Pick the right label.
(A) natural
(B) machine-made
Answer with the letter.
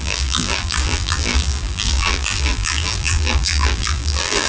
B